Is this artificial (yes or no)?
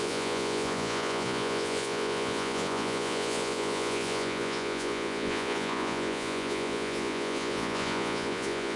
yes